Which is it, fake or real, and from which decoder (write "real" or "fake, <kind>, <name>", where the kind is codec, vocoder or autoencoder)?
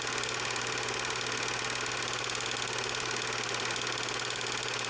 real